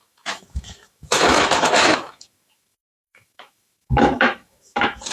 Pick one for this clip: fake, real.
fake